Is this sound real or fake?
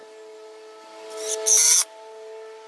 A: real